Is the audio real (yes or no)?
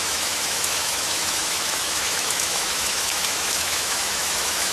no